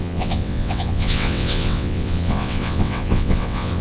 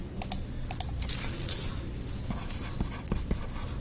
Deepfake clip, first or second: first